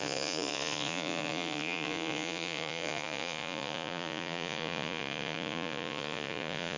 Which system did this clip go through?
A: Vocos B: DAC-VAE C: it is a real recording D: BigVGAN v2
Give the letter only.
A